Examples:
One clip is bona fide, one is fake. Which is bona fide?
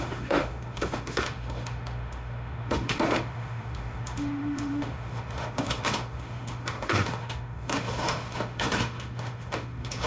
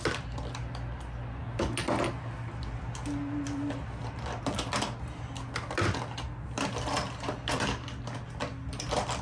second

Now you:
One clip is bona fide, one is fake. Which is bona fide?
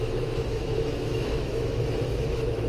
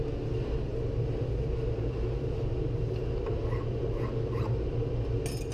second